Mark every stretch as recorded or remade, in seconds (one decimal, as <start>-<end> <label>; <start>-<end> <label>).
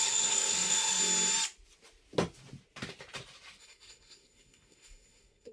0.0-1.0 remade; 1.0-3.6 recorded; 3.6-5.5 remade